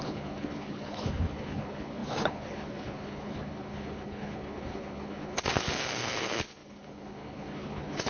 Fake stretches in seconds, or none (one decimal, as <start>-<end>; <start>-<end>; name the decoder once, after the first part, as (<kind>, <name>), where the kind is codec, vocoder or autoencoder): 0.0-8.1 (codec, HILCodec)